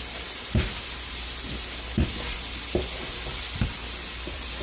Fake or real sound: real